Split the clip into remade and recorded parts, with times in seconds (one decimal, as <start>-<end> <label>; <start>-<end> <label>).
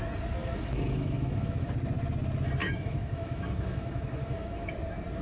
0.0-0.4 recorded; 0.4-1.7 remade; 1.7-2.6 recorded; 2.6-4.7 remade; 4.7-5.2 recorded